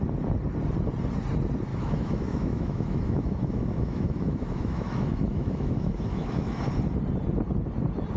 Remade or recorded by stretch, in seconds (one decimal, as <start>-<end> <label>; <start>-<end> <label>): 0.0-1.7 recorded; 1.7-6.6 remade; 6.6-8.2 recorded